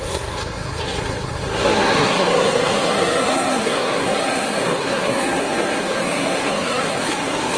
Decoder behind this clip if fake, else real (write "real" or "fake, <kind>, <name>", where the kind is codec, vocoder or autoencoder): fake, codec, SNAC